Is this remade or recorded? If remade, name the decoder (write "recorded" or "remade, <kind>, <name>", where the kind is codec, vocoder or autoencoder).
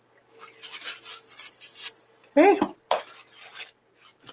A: recorded